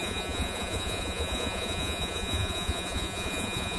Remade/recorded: remade